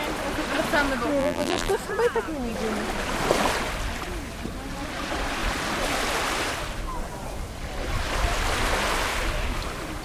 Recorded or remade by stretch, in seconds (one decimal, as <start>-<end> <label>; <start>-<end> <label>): 0.0-1.2 recorded; 1.2-1.7 remade; 1.7-10.0 recorded